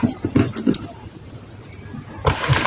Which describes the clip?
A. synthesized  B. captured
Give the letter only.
B